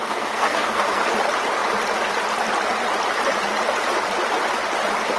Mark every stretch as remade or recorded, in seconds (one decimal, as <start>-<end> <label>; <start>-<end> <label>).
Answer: 0.0-1.0 remade; 1.0-5.2 recorded